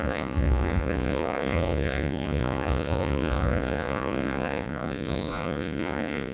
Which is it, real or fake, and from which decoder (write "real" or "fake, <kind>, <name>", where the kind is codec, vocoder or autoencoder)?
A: fake, vocoder, Vocos